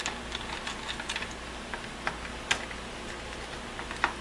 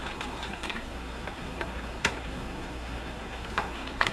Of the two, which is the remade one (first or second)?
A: second